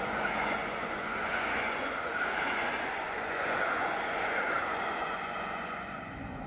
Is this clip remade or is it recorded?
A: remade